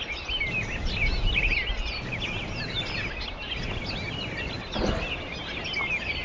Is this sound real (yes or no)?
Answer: yes